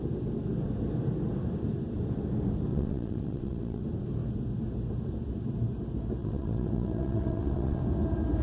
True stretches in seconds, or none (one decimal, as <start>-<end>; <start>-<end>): 0.0-2.7; 3.8-6.2; 7.8-8.4

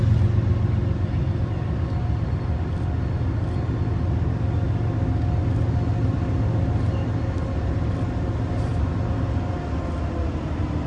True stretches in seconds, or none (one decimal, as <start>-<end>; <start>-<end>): 0.0-10.9

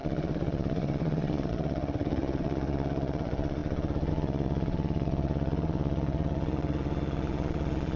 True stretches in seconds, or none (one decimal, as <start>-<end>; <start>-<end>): none

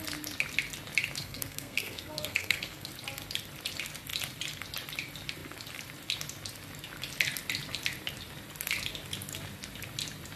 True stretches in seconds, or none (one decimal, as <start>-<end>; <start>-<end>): 0.0-1.2; 2.9-10.4

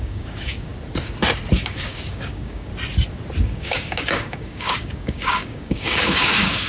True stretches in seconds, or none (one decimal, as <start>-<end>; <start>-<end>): 0.7-1.6; 2.7-3.4